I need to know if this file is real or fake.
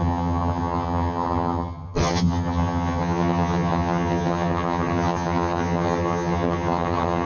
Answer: fake